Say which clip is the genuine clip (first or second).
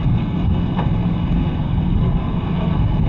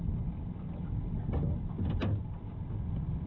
second